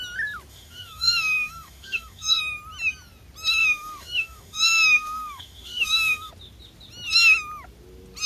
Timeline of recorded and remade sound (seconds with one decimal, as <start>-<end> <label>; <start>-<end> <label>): 0.0-0.5 recorded; 0.5-2.4 remade; 2.4-3.6 recorded; 3.6-6.3 remade; 6.3-8.3 recorded